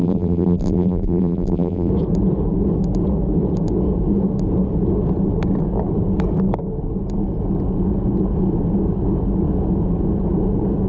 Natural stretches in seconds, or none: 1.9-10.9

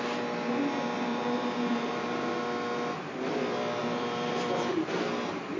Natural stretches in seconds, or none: 0.0-1.1; 2.4-3.8; 4.9-5.6